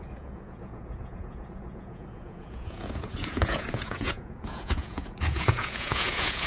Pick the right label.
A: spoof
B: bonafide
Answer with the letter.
A